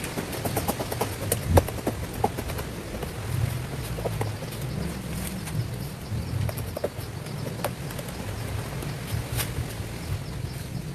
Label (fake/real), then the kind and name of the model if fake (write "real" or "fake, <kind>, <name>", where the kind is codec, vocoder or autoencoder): real